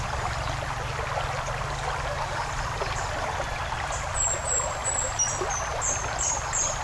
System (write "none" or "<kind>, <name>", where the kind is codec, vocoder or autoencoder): none